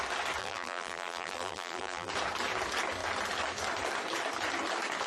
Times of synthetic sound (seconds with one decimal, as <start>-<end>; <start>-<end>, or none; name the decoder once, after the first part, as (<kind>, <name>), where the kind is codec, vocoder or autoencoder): 0.4-2.1 (vocoder, BigVGAN v2)